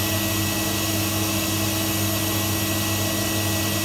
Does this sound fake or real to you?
real